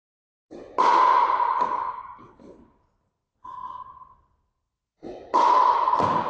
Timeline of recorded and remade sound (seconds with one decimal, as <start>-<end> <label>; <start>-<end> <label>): 0.0-6.3 recorded